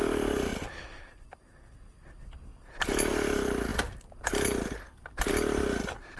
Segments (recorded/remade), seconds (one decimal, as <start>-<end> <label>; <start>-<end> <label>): 0.0-6.2 recorded